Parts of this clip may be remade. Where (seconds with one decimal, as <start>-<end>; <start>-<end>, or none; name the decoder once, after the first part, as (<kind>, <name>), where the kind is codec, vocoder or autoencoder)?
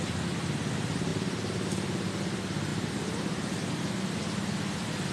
none